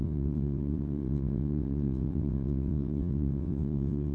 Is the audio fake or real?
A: fake